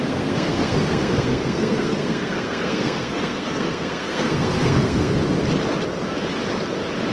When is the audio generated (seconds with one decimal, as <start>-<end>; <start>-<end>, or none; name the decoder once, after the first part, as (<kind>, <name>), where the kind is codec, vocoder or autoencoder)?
0.0-5.2 (codec, SNAC)